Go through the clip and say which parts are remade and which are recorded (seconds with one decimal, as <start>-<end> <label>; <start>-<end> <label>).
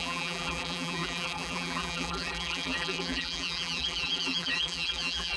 0.0-5.4 remade